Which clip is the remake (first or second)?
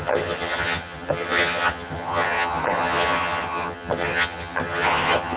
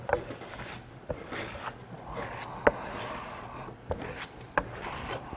first